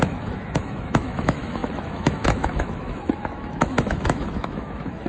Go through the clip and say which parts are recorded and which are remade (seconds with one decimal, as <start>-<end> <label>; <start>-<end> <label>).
0.0-5.1 remade